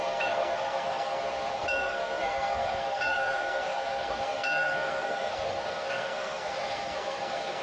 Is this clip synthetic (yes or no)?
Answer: yes